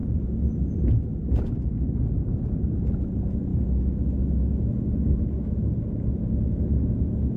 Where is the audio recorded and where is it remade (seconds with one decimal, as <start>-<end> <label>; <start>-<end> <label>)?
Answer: 0.0-3.5 recorded; 3.5-5.7 remade; 5.7-7.4 recorded